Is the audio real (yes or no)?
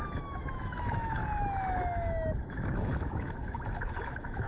no